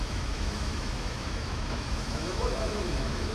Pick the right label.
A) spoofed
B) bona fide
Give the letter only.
A